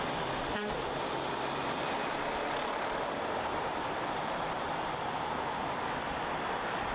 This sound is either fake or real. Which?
real